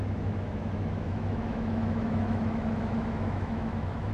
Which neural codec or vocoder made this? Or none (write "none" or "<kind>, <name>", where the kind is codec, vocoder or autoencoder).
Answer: autoencoder, DAC-VAE